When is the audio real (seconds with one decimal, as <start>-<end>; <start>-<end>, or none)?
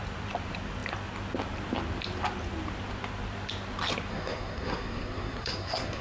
0.0-4.1